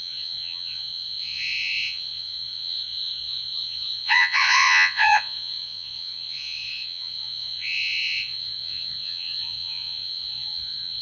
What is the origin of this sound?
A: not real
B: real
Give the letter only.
A